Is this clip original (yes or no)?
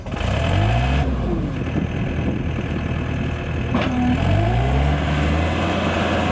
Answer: yes